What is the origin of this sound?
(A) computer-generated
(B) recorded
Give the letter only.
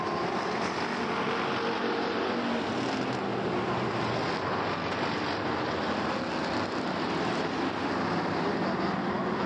B